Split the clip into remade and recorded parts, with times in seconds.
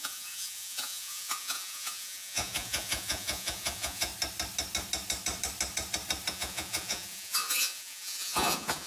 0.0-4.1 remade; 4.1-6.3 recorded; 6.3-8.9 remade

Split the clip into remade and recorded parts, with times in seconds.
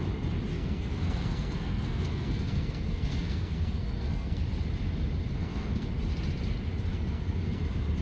0.0-0.5 recorded; 0.5-4.4 remade; 4.4-5.4 recorded; 5.4-5.9 remade; 5.9-6.9 recorded; 6.9-7.6 remade; 7.6-8.0 recorded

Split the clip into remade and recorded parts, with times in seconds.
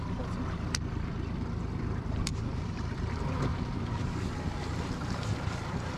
0.0-2.3 recorded; 2.3-3.1 remade; 3.1-3.5 recorded; 3.5-4.0 remade; 4.0-6.0 recorded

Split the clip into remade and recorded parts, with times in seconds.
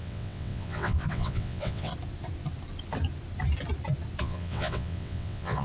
0.0-1.9 remade; 1.9-4.2 recorded; 4.2-5.6 remade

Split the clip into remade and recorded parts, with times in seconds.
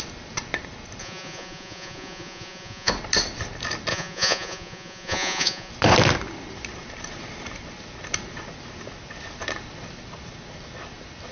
0.0-1.0 recorded; 1.0-2.9 remade; 2.9-3.9 recorded; 3.9-5.7 remade; 5.7-11.3 recorded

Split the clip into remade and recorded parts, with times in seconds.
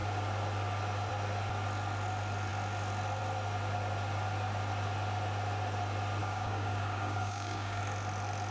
0.0-6.2 recorded; 6.2-7.8 remade; 7.8-8.5 recorded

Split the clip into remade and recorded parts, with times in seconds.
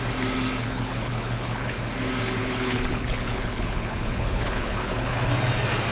0.0-0.6 recorded; 0.6-1.8 remade; 1.8-2.4 recorded; 2.4-5.2 remade; 5.2-5.9 recorded